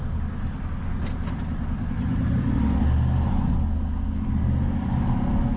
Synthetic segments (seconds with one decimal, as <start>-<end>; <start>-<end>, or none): none